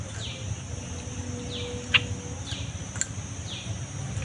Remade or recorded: recorded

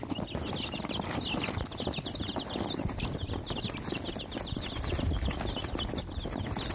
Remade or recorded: recorded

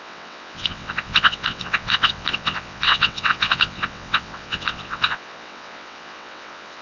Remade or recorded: remade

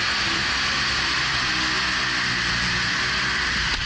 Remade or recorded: recorded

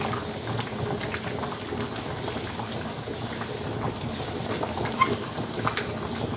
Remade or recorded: recorded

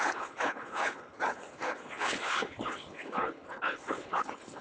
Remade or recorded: remade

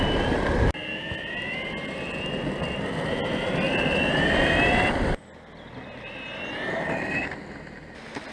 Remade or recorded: recorded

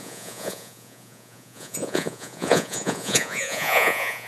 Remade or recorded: remade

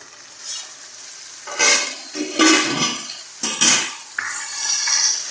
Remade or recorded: recorded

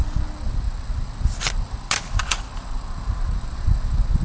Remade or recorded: recorded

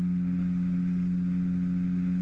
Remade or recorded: recorded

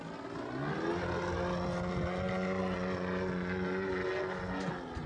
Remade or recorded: recorded